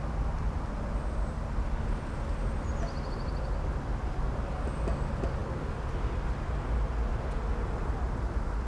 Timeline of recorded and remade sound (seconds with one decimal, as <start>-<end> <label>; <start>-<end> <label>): 0.0-8.7 recorded